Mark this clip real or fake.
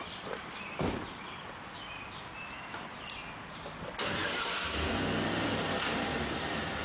fake